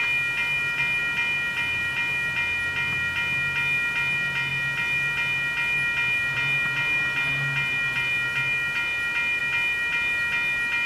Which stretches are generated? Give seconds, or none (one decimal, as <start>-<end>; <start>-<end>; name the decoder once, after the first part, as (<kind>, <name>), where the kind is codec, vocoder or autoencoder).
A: none